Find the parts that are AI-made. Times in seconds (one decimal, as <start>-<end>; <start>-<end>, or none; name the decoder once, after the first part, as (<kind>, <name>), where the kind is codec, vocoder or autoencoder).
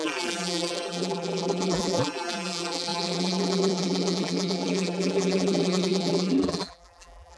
0.0-7.4 (vocoder, BigVGAN v2)